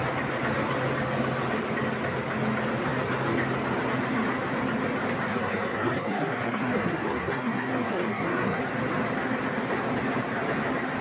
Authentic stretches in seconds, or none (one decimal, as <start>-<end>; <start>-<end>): 0.0-5.3; 8.6-11.0